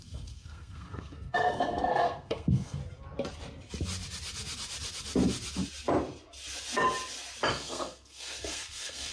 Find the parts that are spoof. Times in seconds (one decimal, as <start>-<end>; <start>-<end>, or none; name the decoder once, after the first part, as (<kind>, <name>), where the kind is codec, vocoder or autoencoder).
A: 0.0-2.8 (codec, SNAC); 7.5-9.1